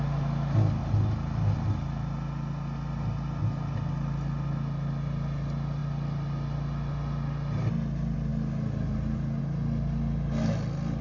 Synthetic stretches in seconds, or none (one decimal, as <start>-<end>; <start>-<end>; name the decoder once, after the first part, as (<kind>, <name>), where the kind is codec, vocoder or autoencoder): none

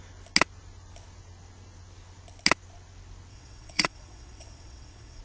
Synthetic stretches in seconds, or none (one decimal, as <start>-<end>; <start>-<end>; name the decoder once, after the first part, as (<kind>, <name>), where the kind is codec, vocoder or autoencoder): 3.3-5.2 (vocoder, WaveNeXt)

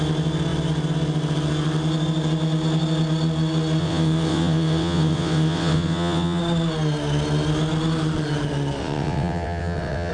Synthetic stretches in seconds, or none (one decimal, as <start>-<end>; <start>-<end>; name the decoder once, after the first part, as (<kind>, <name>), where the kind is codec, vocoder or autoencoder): 3.8-6.4 (vocoder, WaveNeXt); 8.8-10.1

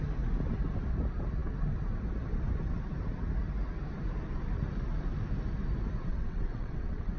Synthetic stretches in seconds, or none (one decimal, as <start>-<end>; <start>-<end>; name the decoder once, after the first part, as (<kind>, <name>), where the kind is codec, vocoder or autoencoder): 6.1-7.2 (vocoder, WaveNeXt)

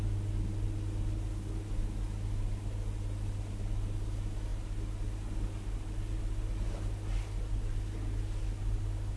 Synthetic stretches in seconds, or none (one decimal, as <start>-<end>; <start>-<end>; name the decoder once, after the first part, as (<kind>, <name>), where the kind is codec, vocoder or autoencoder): none

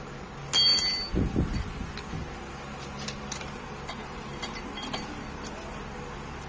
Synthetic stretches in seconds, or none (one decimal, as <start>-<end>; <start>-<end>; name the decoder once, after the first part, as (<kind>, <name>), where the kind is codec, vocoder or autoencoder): none